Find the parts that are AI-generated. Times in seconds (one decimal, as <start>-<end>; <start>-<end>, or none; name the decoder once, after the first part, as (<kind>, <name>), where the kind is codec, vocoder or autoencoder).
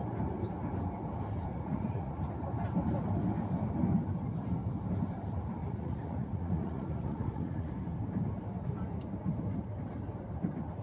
1.5-2.3 (vocoder, Vocos); 5.6-7.7